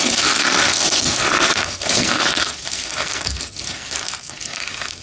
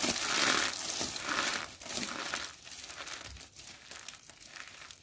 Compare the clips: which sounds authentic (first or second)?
second